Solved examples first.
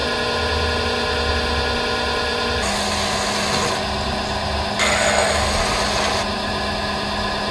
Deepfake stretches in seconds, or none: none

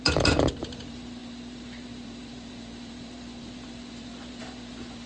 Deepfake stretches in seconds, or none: 0.0-5.1